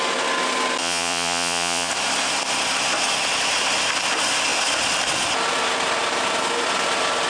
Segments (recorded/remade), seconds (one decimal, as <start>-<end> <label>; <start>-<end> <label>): 0.0-0.8 recorded; 0.8-1.9 remade; 1.9-7.3 recorded